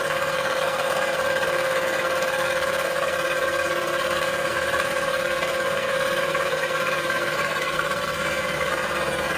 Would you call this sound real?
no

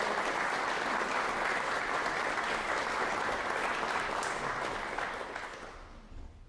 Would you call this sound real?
yes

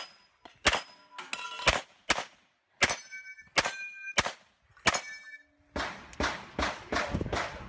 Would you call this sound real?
yes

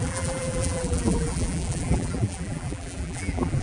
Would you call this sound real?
no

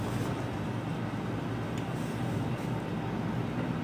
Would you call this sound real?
yes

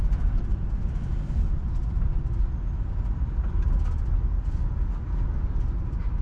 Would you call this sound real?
yes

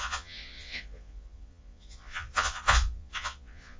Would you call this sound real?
no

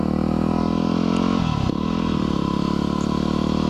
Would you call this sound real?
yes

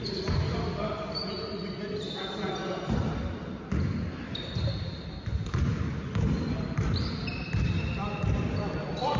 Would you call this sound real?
yes